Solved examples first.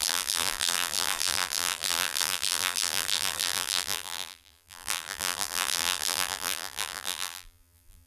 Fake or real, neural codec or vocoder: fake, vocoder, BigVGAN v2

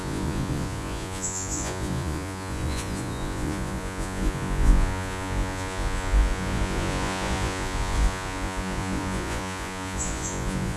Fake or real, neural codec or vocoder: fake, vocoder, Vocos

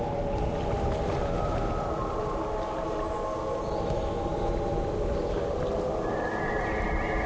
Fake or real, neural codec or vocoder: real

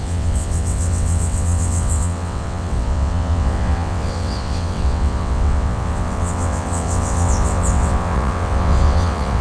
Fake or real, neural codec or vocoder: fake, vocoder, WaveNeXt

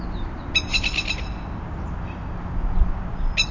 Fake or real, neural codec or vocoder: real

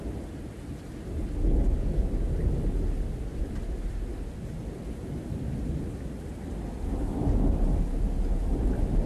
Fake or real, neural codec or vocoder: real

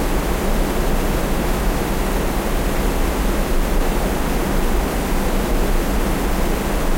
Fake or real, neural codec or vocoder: fake, vocoder, BigVGAN v2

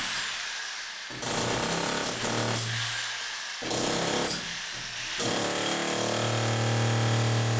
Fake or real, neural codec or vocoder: real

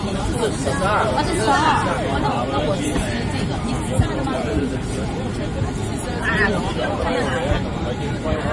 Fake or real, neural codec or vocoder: fake, vocoder, BigVGAN v2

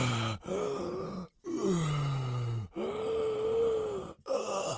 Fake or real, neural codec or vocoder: real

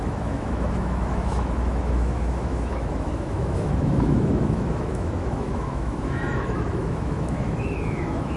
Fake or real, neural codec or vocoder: fake, autoencoder, DAC-VAE